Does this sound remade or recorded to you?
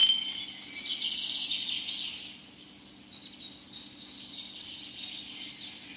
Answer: recorded